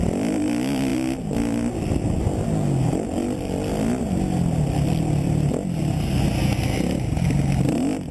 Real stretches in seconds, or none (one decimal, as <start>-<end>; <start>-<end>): 0.0-8.1